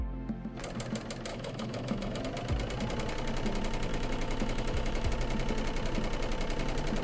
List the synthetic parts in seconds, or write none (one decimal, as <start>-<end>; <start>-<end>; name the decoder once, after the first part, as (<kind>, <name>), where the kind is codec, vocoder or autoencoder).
1.3-2.2 (autoencoder, DAC-VAE); 3.9-5.1